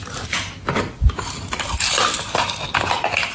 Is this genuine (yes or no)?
yes